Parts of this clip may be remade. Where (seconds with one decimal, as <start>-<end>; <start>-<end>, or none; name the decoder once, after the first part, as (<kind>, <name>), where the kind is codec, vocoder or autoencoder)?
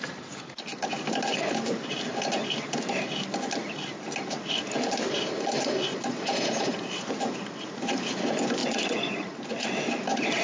5.9-7.1 (vocoder, Vocos); 8.6-9.4